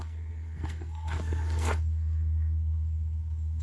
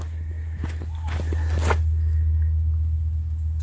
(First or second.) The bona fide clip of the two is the second